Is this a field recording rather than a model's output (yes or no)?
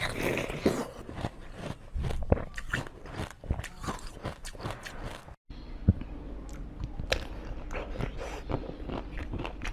yes